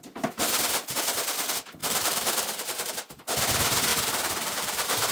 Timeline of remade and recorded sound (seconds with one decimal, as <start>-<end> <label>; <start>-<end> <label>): 0.0-1.8 recorded; 1.8-2.9 remade; 2.9-3.9 recorded; 3.9-5.1 remade